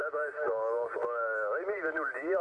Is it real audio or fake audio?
real